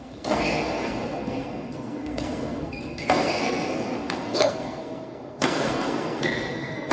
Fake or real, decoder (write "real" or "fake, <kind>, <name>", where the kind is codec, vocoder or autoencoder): fake, codec, SNAC